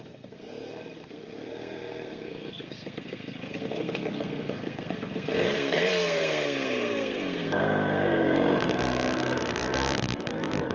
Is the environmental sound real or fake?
fake